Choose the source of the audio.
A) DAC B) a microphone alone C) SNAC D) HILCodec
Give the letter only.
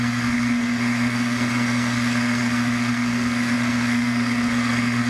C